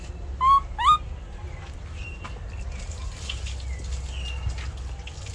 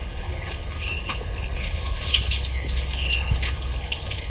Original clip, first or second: first